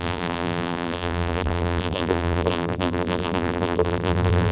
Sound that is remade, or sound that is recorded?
remade